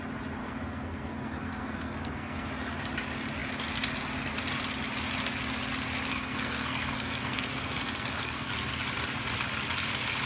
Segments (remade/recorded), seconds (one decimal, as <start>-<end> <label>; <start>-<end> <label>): 0.0-0.4 recorded; 0.4-2.5 remade; 2.5-6.1 recorded; 6.1-8.5 remade; 8.5-10.3 recorded